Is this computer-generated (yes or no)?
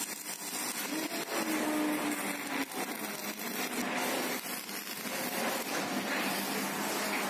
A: no